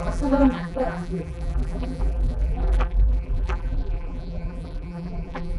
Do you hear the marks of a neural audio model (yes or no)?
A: yes